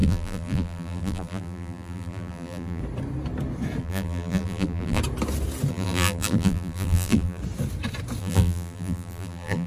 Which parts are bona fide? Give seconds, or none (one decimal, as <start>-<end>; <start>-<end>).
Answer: 2.8-3.8; 5.0-5.7; 7.4-8.2